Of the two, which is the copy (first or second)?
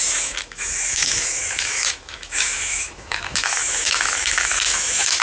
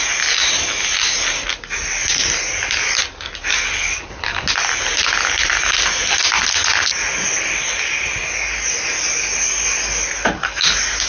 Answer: first